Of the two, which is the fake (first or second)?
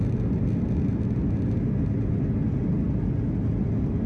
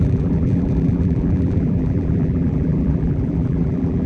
second